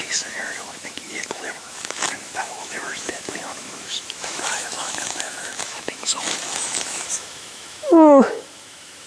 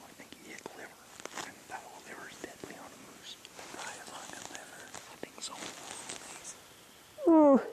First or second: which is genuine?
second